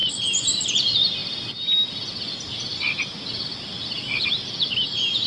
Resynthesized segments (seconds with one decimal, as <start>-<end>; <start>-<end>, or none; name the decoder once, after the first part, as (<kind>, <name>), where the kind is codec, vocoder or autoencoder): none